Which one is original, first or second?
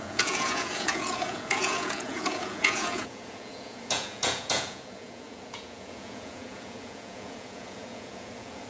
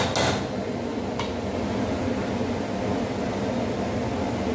second